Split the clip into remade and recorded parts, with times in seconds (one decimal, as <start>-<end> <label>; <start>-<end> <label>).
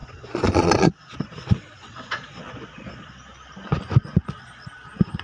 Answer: 0.0-3.1 remade; 3.1-5.2 recorded